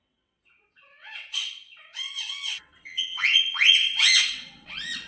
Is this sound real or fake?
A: fake